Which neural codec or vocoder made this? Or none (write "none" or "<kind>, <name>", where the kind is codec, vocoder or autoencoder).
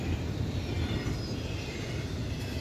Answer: none